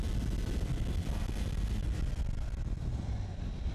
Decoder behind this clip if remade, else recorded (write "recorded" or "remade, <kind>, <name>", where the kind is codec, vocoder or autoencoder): recorded